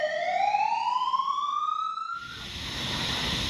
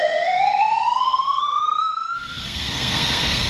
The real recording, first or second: first